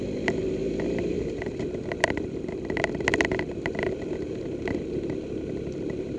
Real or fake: real